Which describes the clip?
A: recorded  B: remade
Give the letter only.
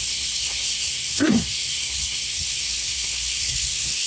B